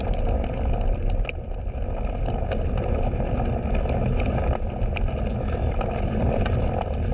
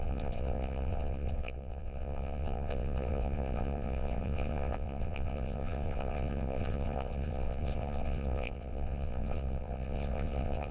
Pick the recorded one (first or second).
first